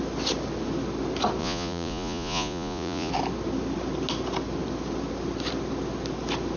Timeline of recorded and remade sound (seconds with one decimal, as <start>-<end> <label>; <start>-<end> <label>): 0.0-1.4 recorded; 1.4-3.1 remade; 3.1-6.6 recorded